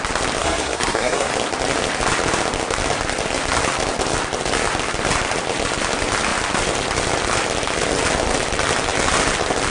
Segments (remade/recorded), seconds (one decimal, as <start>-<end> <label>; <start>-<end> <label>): 0.0-0.4 recorded; 0.4-1.3 remade; 1.3-9.7 recorded